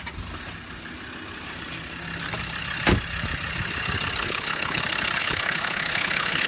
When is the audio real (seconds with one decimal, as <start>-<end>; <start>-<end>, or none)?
0.0-4.2; 4.8-5.2